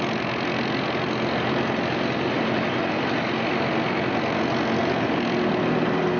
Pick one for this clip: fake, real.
real